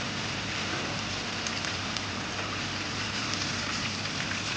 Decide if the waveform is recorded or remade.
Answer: remade